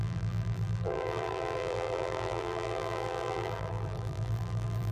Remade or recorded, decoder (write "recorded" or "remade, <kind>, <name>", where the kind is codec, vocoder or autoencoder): remade, vocoder, BigVGAN v2